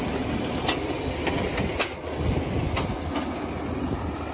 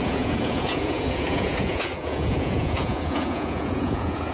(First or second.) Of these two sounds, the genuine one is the first